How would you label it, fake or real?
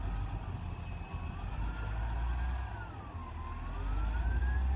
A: real